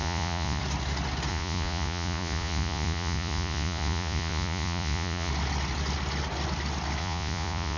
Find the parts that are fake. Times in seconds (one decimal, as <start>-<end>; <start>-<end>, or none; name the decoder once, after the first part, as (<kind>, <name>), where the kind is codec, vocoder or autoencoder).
0.0-0.6 (vocoder, Vocos); 1.3-5.3; 7.0-7.8

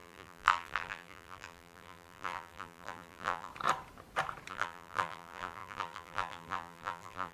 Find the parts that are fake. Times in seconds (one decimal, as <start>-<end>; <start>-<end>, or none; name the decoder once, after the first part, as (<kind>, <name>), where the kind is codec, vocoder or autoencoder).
0.0-3.5 (vocoder, BigVGAN v2); 4.5-7.3

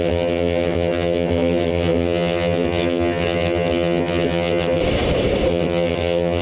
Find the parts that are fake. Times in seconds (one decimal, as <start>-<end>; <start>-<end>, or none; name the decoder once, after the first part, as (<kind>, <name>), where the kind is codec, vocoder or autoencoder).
0.0-4.8 (vocoder, HiFi-GAN); 5.5-6.4

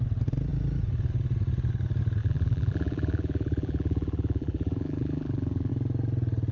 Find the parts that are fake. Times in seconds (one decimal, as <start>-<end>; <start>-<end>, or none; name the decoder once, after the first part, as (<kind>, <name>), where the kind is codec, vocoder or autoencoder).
2.2-5.7 (vocoder, BigVGAN v2)

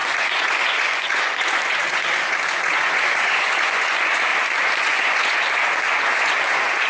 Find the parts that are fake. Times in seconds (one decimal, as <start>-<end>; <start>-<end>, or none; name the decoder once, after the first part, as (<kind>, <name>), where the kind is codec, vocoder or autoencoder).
0.0-4.3 (vocoder, Vocos); 4.8-6.9

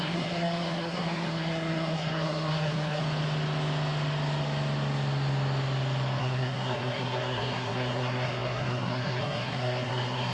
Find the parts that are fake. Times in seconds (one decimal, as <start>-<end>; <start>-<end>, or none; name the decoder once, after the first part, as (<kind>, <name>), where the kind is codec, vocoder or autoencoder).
0.0-3.0 (codec, SNAC); 6.2-10.3

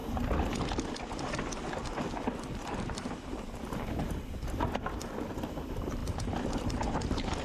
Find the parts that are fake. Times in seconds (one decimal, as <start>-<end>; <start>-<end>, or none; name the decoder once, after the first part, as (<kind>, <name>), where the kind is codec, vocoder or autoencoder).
1.8-6.0 (vocoder, BigVGAN v2); 6.6-7.4

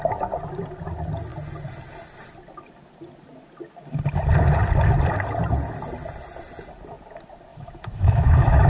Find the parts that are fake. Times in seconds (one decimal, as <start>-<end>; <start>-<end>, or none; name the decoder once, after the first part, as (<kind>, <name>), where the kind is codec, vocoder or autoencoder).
7.5-8.7 (autoencoder, DAC-VAE)